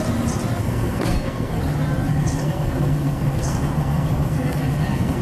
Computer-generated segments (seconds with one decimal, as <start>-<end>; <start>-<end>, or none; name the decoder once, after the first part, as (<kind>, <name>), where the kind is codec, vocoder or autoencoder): 0.6-1.6 (codec, SNAC); 2.1-5.2